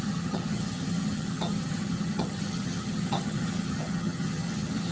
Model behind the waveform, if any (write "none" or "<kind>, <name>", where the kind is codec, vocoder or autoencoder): vocoder, HiFi-GAN